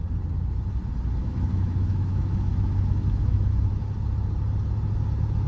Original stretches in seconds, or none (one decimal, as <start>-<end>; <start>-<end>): 0.0-1.2; 3.7-5.5